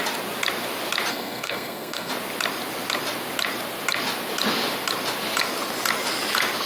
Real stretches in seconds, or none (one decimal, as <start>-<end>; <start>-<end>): 0.0-1.1; 2.1-6.7